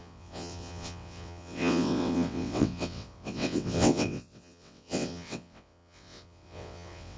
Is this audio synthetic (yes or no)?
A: yes